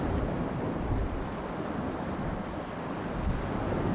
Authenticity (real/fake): real